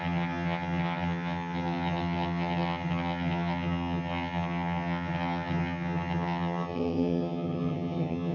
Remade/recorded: remade